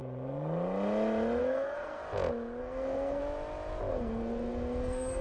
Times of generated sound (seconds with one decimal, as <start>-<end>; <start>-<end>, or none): 1.4-2.0; 2.6-3.2; 3.9-5.2